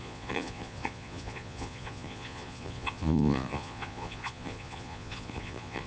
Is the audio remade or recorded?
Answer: remade